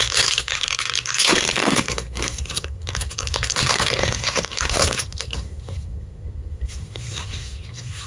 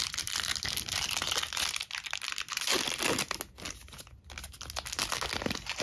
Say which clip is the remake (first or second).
first